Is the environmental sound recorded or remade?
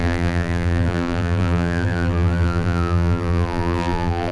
remade